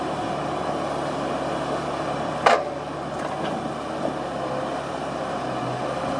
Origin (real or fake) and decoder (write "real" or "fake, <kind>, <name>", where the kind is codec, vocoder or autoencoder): real